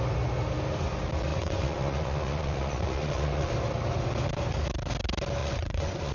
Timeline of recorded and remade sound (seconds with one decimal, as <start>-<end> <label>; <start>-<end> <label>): 0.0-1.3 recorded; 1.3-3.5 remade; 3.5-5.4 recorded; 5.4-6.1 remade